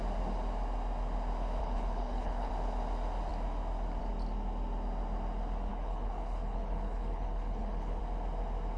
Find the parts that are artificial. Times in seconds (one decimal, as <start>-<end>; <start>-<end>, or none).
1.6-2.5; 5.7-8.0